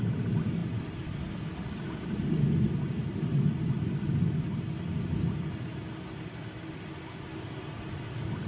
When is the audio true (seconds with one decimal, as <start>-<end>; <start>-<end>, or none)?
0.0-8.5

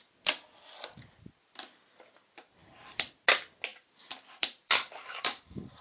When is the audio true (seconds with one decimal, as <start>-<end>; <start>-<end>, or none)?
0.0-2.6; 3.1-3.7

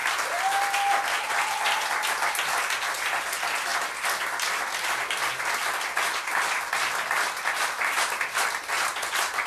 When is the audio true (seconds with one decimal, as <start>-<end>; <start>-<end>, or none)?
0.0-9.5

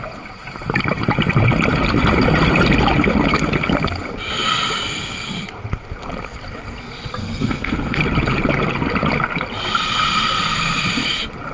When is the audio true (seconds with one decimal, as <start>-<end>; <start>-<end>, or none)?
0.0-7.2; 8.0-11.5

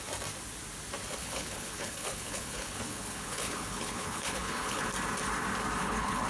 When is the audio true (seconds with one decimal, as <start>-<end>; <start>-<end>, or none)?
0.0-1.2; 4.9-5.8

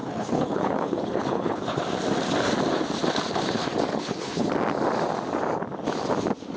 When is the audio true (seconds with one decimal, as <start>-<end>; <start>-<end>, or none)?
1.8-3.9; 4.5-6.6